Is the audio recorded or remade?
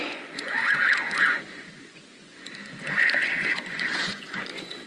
remade